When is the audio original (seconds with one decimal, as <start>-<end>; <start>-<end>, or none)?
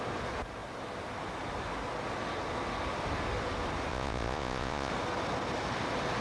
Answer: 0.0-3.9; 4.9-6.2